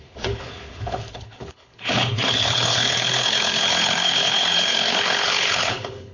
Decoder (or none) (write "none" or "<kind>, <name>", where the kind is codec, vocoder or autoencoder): codec, HILCodec